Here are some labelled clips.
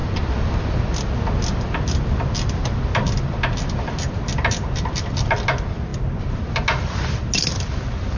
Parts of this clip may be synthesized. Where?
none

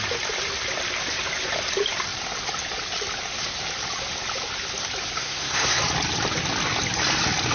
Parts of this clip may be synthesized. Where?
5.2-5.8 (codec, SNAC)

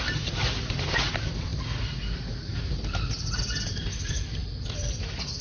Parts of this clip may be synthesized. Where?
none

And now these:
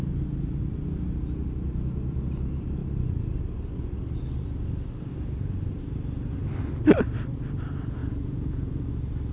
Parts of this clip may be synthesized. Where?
8.0-8.9 (vocoder, Vocos)